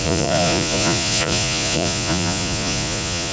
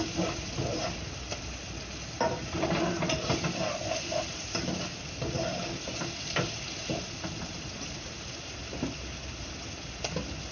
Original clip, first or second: second